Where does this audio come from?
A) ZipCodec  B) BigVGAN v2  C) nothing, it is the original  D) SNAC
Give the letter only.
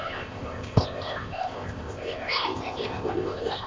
A